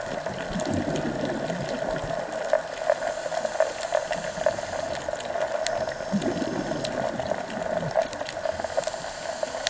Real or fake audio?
real